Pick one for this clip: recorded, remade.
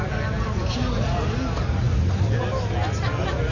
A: recorded